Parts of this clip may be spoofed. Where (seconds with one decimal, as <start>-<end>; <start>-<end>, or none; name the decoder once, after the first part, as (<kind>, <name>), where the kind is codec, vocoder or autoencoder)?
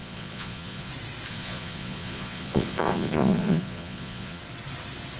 0.0-0.9 (vocoder, Vocos); 1.3-4.4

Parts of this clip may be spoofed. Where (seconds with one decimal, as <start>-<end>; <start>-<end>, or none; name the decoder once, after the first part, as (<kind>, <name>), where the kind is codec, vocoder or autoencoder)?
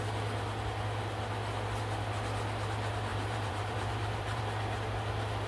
3.1-4.4 (vocoder, BigVGAN v2)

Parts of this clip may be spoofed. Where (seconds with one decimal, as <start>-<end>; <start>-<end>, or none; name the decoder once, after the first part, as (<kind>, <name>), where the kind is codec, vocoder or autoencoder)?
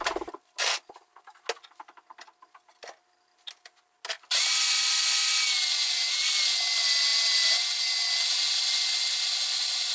none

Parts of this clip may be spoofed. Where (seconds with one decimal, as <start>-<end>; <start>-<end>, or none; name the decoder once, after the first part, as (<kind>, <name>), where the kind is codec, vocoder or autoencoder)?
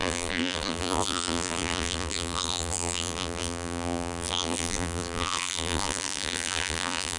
0.0-7.2 (vocoder, BigVGAN v2)